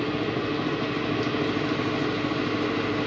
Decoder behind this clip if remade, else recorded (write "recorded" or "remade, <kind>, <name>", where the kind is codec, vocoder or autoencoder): recorded